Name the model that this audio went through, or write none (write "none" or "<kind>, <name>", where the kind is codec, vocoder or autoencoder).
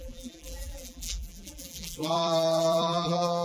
vocoder, BigVGAN v2